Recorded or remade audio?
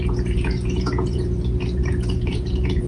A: remade